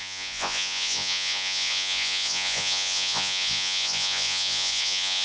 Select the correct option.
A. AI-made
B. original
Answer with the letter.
A